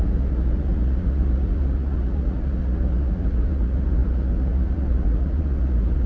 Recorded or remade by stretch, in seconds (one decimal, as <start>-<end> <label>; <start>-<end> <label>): 0.0-6.1 remade